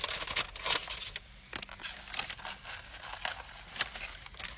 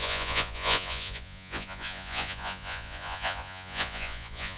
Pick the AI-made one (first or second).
second